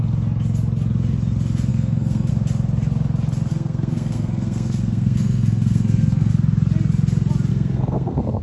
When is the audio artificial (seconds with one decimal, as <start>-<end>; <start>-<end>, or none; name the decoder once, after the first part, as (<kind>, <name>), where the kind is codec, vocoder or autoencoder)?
1.7-2.3 (codec, SNAC); 3.5-6.3; 7.5-8.4

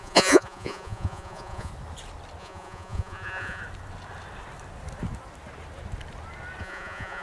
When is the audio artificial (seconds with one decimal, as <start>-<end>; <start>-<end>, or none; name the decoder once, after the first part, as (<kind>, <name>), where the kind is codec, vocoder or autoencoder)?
0.0-1.7 (vocoder, Vocos); 2.4-3.6; 6.6-7.2